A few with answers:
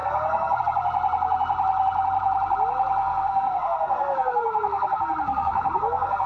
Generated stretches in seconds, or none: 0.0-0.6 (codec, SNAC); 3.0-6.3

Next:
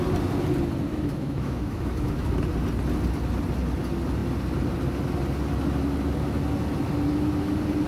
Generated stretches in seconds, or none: 0.9-2.3 (autoencoder, DAC-VAE)

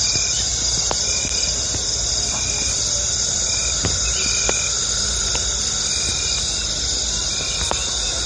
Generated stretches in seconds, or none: none